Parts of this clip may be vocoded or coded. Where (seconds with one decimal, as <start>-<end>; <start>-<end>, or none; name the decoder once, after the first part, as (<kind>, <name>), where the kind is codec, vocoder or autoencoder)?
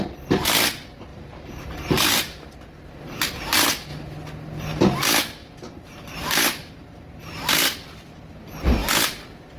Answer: 1.1-2.5 (vocoder, BigVGAN v2); 5.4-7.2